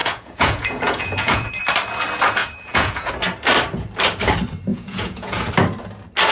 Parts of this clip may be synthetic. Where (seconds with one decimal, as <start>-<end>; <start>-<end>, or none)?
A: 0.0-1.6; 2.4-3.1; 4.7-5.5